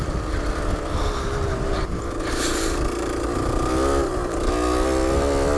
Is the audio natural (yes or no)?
yes